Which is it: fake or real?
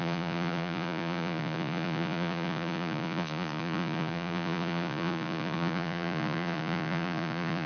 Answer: fake